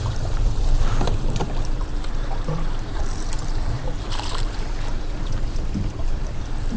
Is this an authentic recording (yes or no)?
no